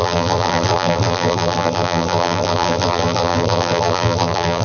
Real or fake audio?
fake